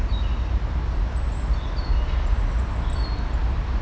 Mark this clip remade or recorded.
recorded